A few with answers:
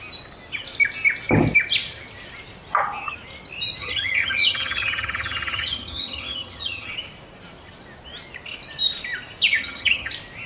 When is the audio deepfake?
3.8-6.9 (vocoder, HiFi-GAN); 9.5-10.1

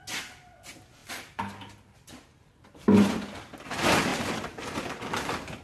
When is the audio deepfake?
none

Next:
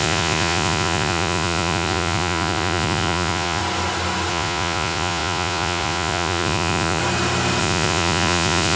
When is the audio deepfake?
0.0-3.6 (vocoder, Vocos); 4.3-7.0; 7.6-8.8

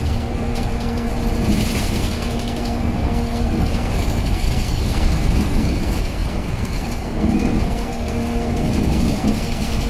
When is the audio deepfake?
0.0-1.1 (codec, SNAC); 1.8-9.9